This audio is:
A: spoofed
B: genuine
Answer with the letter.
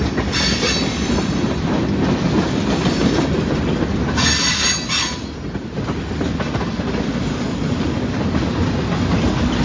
B